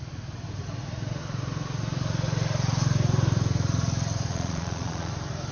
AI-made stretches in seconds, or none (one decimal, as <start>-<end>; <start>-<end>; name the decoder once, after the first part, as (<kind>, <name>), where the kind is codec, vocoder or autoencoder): 4.3-5.1 (vocoder, Vocos)